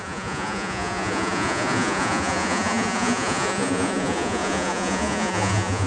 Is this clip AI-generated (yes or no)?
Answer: yes